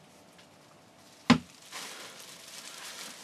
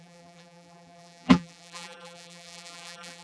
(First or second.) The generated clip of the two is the second